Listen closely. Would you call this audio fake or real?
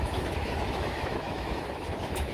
fake